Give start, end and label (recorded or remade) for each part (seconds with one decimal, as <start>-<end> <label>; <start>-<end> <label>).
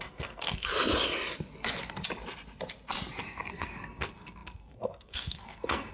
0.0-0.7 remade; 0.7-3.5 recorded; 3.5-5.9 remade